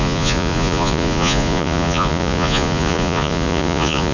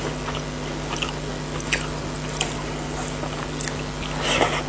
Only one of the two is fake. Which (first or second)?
first